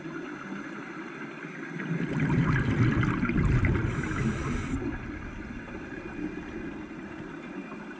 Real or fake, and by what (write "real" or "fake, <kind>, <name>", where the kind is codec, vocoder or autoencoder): real